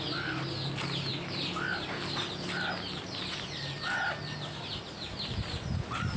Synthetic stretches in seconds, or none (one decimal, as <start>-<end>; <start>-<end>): none